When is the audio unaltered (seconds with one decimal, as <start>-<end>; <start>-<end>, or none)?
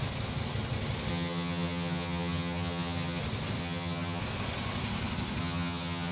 0.0-1.1; 3.2-3.6; 4.2-5.4